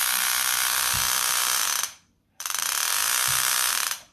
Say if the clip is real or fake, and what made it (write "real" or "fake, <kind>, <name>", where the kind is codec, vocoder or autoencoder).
fake, vocoder, BigVGAN v2